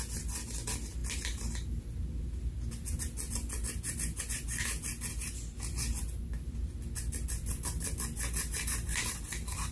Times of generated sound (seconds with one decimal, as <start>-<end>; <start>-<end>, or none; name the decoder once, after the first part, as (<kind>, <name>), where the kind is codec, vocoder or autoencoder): none